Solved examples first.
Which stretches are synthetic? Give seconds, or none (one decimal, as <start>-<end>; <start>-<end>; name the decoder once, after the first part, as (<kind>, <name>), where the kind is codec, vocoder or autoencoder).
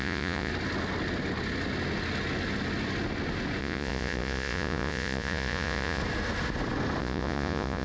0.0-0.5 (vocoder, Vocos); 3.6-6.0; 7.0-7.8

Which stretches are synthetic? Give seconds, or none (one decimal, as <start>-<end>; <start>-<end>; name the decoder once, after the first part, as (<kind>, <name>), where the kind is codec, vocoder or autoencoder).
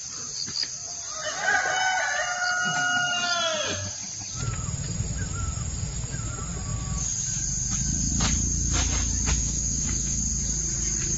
9.4-10.2 (autoencoder, DAC-VAE)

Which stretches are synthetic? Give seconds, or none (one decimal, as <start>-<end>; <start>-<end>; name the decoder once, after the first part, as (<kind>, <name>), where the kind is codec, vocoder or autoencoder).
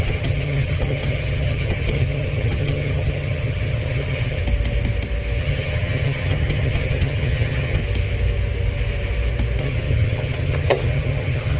0.0-4.4 (vocoder, HiFi-GAN); 5.4-7.8; 9.6-11.6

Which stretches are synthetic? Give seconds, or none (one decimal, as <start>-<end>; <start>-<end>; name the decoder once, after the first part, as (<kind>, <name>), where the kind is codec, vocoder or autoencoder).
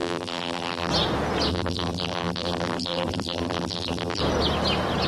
0.0-0.9 (vocoder, BigVGAN v2); 1.5-4.2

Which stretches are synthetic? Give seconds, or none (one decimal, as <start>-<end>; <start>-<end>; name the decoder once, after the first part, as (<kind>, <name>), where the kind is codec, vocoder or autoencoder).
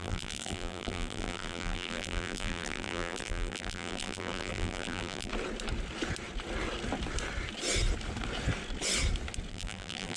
0.0-5.3 (vocoder, BigVGAN v2); 9.5-10.2